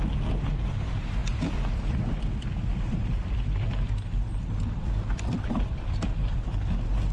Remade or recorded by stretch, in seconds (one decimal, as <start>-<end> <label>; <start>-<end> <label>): 0.0-7.1 recorded